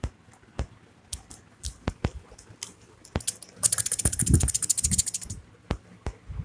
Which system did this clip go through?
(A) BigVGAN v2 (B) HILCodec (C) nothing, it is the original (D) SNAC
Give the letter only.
C